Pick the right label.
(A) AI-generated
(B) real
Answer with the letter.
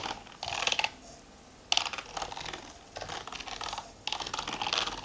B